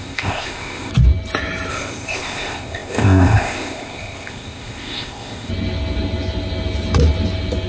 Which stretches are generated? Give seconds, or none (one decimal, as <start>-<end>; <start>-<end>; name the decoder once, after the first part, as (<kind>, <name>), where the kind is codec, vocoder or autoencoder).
0.0-0.9 (codec, ZipCodec); 1.7-5.5